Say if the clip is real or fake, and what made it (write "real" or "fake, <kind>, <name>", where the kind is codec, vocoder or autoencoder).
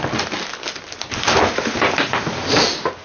real